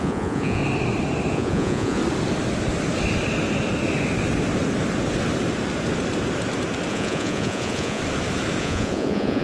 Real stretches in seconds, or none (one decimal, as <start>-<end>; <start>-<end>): 0.6-1.3; 2.0-6.9; 8.0-8.6